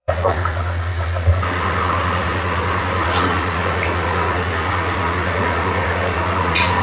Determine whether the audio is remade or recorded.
remade